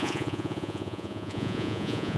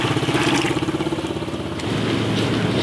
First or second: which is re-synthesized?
first